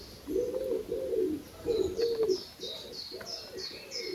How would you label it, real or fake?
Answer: real